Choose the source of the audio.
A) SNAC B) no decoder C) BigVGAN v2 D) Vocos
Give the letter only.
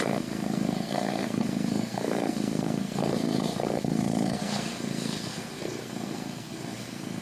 A